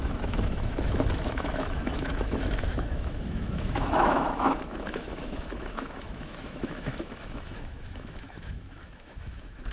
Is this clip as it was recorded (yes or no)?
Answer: no